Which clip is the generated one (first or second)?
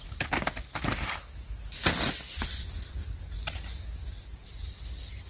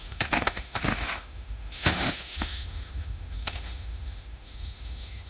second